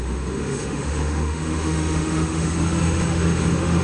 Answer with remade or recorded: remade